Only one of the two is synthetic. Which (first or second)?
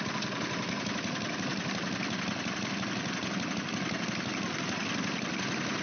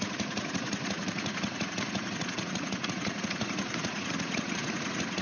second